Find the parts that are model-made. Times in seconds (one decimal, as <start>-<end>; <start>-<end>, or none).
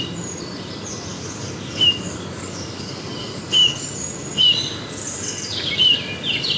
1.1-3.4